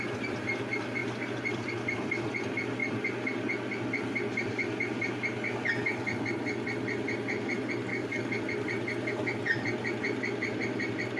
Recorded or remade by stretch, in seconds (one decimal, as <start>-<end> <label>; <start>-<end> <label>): 0.0-7.9 recorded; 7.9-8.4 remade; 8.4-11.2 recorded

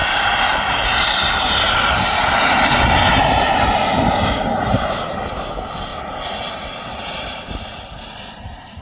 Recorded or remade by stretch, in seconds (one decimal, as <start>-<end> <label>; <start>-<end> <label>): 0.0-5.9 remade; 5.9-6.4 recorded; 6.4-8.8 remade

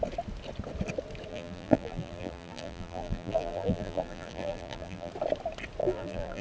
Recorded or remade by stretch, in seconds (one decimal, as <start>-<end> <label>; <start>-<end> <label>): 0.0-1.3 recorded; 1.3-5.1 remade; 5.1-5.8 recorded; 5.8-6.4 remade